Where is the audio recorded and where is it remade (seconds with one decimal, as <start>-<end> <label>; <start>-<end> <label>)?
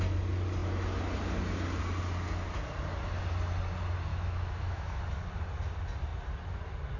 0.0-4.1 recorded; 4.1-5.0 remade; 5.0-7.0 recorded